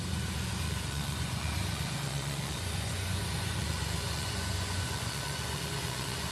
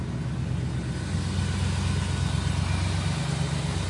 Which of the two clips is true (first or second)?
second